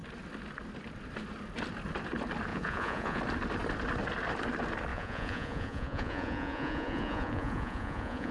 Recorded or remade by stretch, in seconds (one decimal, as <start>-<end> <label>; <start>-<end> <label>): 0.0-2.5 recorded; 2.5-3.2 remade; 3.2-4.9 recorded; 4.9-8.3 remade